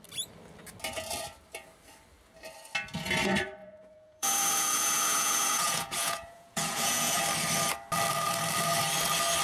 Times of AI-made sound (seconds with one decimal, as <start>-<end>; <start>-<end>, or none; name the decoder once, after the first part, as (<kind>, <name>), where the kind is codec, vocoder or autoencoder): 3.6-7.2 (vocoder, Vocos)